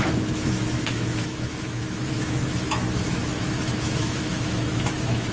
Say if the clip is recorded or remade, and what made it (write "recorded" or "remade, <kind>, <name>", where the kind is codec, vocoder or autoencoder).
remade, autoencoder, DAC-VAE